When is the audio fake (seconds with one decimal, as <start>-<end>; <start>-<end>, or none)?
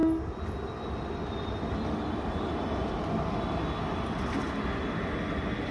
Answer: none